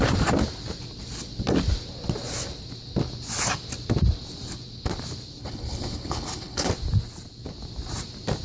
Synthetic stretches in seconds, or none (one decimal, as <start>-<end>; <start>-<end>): 5.4-6.7